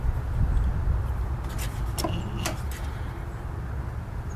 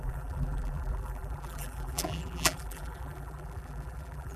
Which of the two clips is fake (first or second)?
second